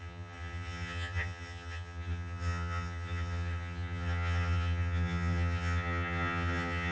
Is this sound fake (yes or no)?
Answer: yes